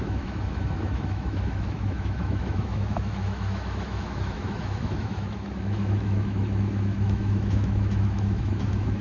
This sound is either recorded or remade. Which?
remade